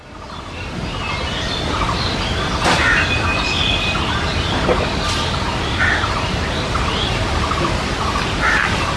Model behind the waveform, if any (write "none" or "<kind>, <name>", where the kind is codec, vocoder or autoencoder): none